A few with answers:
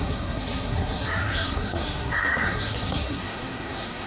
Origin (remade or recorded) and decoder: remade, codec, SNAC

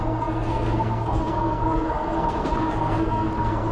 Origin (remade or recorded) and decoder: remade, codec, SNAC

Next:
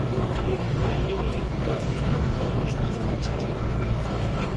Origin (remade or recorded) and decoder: remade, codec, DAC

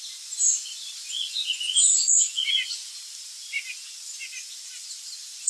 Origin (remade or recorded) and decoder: recorded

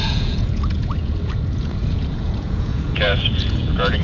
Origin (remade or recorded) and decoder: remade, vocoder, Vocos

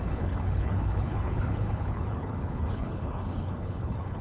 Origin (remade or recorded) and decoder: remade, codec, HILCodec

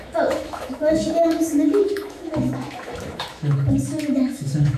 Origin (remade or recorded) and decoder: remade, autoencoder, DAC-VAE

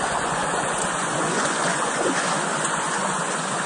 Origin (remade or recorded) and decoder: remade, vocoder, Vocos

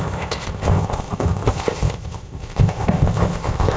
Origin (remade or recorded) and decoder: remade, codec, ZipCodec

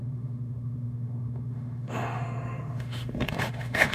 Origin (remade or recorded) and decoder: remade, autoencoder, DAC-VAE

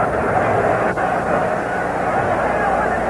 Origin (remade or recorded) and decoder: recorded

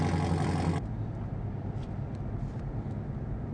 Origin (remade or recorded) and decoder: recorded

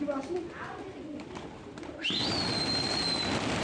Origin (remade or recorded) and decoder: recorded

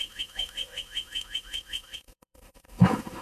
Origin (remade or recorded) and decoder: remade, autoencoder, DAC-VAE